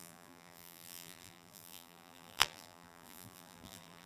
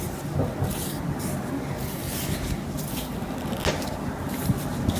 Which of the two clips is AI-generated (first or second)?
first